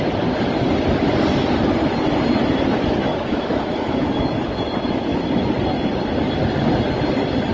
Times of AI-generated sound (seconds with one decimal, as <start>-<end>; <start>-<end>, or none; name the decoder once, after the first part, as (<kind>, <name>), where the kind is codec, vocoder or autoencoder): 3.1-5.2 (autoencoder, DAC-VAE)